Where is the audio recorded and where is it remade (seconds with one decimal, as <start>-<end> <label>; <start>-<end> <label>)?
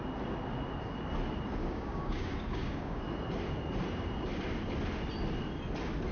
0.0-1.6 recorded; 1.6-3.0 remade; 3.0-6.1 recorded